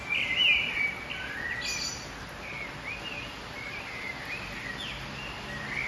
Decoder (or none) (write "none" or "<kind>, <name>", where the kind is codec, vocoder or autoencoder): none